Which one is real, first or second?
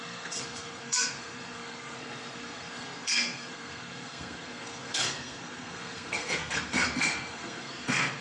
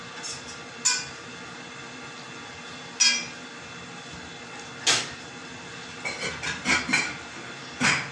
second